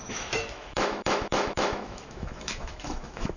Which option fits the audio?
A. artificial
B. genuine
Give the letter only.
A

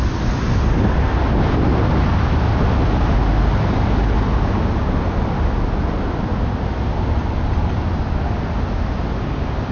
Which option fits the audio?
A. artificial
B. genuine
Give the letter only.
B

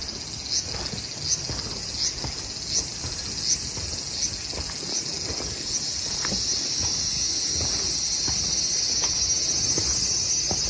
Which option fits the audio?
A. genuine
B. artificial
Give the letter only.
A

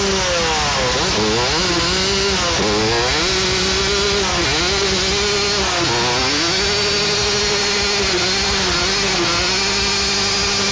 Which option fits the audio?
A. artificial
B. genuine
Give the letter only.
B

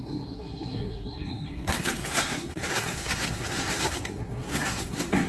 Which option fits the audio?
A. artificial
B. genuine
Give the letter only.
A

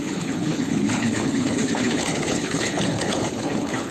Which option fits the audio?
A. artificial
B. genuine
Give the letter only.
A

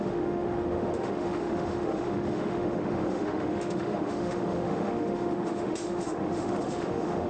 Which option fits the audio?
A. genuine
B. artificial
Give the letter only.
B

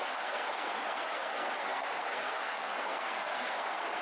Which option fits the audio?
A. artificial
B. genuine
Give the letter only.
A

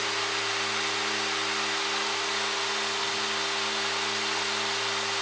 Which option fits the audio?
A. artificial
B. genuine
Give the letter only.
B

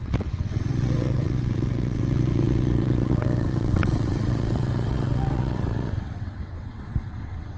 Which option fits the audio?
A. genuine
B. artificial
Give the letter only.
B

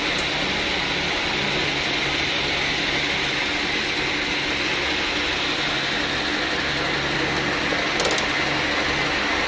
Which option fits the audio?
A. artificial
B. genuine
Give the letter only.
B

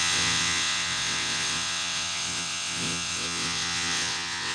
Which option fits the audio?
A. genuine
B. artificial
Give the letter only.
B